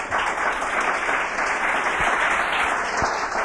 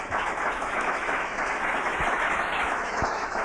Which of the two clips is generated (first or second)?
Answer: second